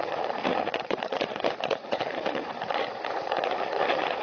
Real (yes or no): no